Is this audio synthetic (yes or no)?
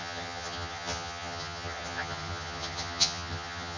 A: yes